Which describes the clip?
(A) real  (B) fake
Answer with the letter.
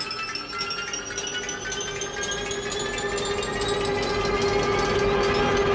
A